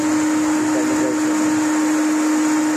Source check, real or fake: real